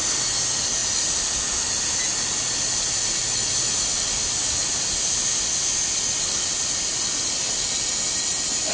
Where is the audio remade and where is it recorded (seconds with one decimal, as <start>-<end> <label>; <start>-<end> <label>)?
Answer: 0.0-8.7 recorded